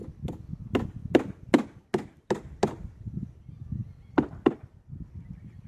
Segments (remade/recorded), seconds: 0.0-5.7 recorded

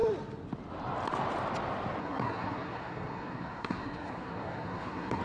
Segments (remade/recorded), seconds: 0.0-2.0 recorded; 2.0-5.2 remade

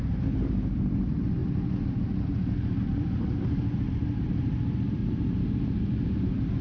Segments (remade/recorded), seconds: 0.0-1.4 remade; 1.4-2.7 recorded; 2.7-5.0 remade; 5.0-6.6 recorded

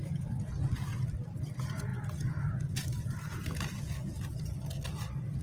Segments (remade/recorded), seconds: 0.0-0.9 recorded; 0.9-1.4 remade; 1.4-5.4 recorded

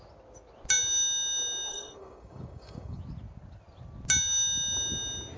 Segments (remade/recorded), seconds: 0.0-1.7 recorded; 1.7-3.0 remade; 3.0-5.4 recorded